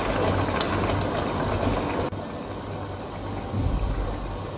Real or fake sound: real